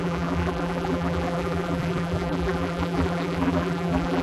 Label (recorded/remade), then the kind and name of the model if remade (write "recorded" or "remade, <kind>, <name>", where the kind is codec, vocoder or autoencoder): remade, vocoder, BigVGAN v2